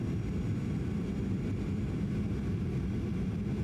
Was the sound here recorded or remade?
recorded